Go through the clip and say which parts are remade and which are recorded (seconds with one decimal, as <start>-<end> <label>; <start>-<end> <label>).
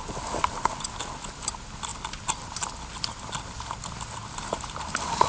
0.0-5.3 recorded